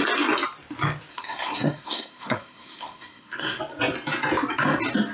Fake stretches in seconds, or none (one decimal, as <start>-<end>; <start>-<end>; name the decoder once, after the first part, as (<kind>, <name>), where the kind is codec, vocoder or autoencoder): 1.1-3.6 (codec, SNAC)